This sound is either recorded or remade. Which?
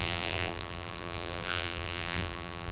remade